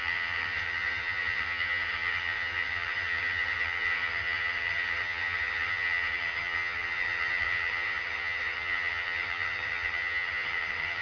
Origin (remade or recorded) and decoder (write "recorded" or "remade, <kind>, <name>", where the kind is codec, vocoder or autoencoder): remade, vocoder, HiFi-GAN